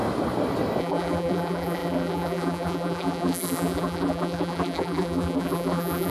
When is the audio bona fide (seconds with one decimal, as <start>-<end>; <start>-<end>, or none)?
0.0-0.8